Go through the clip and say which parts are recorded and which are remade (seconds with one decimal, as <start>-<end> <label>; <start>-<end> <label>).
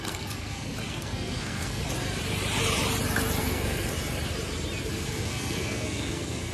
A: 0.0-1.8 remade; 1.8-3.4 recorded; 3.4-3.9 remade; 3.9-4.9 recorded; 4.9-6.5 remade